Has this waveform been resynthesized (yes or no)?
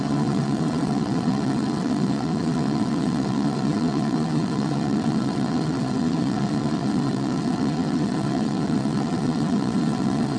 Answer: yes